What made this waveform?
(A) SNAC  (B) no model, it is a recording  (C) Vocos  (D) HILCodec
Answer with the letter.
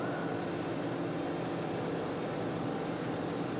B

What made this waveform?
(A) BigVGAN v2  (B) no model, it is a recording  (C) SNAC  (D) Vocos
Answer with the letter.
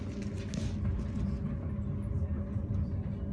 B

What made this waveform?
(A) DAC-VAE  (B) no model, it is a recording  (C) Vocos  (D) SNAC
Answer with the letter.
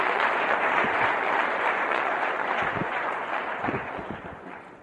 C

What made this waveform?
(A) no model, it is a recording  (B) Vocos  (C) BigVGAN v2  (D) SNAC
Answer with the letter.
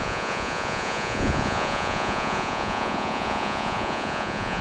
B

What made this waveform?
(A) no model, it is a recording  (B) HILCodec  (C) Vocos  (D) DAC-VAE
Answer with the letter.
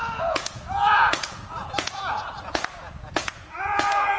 C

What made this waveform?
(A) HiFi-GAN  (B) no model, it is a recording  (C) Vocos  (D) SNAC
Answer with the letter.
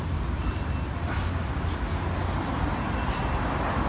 B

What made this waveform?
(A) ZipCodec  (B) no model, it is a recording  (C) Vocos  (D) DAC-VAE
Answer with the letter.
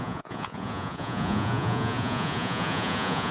C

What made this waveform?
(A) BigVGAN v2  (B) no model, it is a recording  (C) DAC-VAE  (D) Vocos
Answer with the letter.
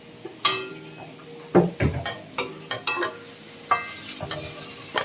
B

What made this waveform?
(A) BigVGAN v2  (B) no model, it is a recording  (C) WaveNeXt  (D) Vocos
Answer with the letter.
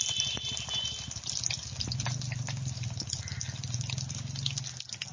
B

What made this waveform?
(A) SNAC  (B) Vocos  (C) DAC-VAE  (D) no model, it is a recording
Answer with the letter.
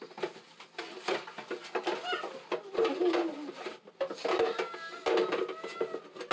D